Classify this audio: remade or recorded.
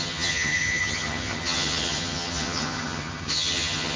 remade